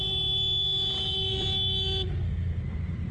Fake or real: real